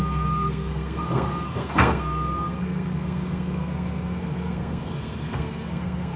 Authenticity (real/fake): fake